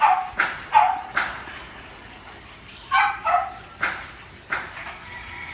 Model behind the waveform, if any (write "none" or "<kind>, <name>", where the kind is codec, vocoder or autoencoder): none